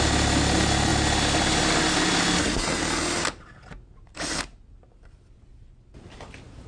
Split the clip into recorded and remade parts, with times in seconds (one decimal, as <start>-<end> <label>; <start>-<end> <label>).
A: 0.0-6.7 recorded